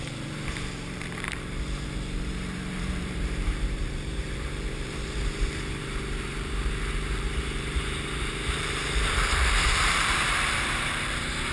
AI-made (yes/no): yes